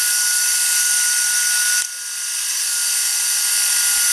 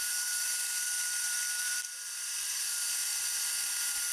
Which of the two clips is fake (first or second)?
second